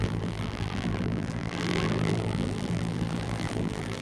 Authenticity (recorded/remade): remade